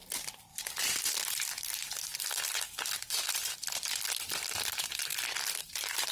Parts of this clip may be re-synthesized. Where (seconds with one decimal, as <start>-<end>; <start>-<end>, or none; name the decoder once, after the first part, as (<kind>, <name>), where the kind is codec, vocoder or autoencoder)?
1.5-2.1 (vocoder, BigVGAN v2); 2.6-3.4; 4.5-5.1; 5.6-6.1